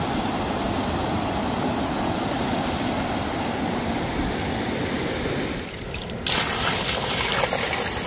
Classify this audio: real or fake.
real